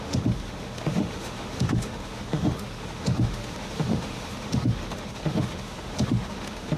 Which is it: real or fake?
fake